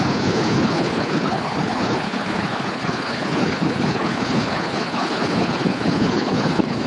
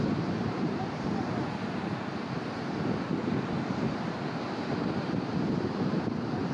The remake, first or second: first